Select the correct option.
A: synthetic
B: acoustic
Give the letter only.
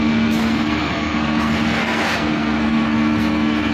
A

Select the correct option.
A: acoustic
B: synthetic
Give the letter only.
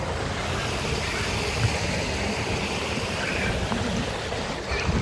A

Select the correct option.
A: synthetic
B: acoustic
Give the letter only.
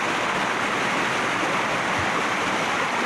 B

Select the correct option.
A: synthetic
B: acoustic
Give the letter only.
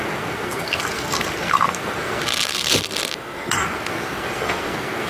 A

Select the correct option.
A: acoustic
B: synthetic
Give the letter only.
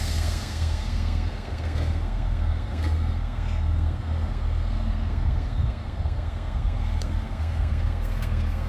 B